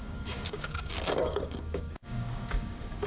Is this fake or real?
fake